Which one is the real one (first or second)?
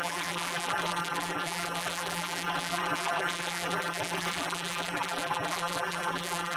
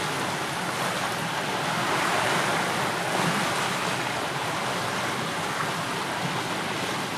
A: second